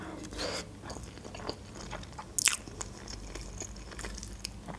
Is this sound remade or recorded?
recorded